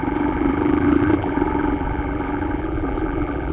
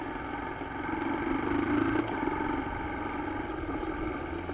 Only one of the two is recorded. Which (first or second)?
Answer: second